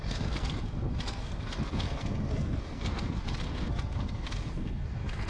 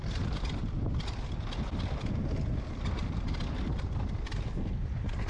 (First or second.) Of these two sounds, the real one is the second